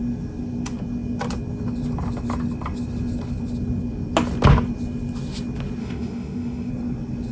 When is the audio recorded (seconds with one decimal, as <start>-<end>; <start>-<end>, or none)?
0.0-5.8; 6.7-7.3